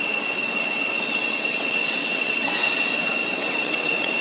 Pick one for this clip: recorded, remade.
remade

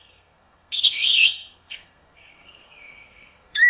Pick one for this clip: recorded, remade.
remade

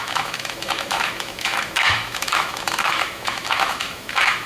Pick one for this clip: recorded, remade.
remade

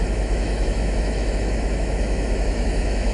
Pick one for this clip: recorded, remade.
remade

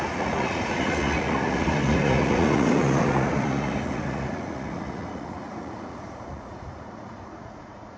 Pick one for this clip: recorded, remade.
remade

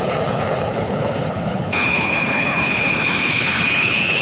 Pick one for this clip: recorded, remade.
remade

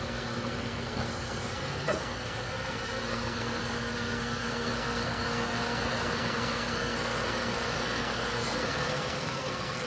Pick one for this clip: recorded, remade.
remade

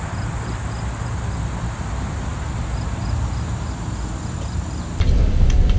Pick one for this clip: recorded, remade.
recorded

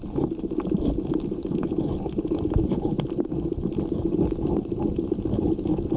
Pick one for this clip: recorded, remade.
recorded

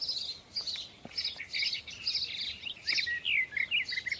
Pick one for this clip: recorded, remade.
recorded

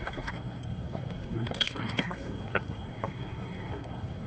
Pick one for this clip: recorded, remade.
remade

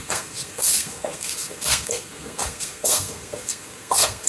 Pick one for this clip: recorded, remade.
remade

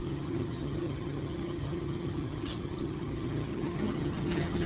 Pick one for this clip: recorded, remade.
remade